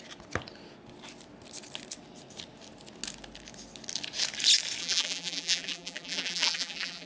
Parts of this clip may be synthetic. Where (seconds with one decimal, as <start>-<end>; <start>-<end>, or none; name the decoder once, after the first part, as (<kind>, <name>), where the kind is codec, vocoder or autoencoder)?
4.8-7.1 (vocoder, BigVGAN v2)